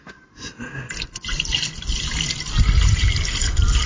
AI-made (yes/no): no